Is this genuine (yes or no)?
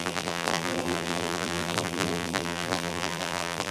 no